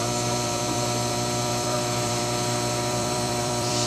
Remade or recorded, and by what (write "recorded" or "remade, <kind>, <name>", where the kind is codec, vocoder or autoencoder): remade, vocoder, BigVGAN v2